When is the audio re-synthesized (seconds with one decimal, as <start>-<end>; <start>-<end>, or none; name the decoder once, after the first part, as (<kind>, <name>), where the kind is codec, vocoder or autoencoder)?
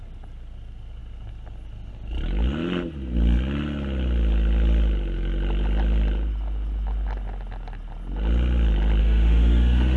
9.0-10.0 (autoencoder, DAC-VAE)